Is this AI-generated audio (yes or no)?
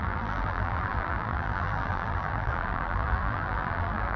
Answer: yes